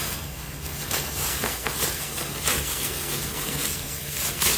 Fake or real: fake